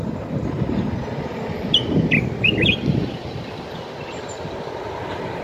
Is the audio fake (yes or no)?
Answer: no